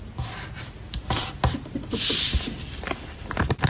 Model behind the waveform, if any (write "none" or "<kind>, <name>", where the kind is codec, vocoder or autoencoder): vocoder, BigVGAN v2